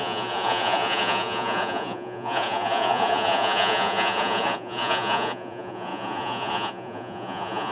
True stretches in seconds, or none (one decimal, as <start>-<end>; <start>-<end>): none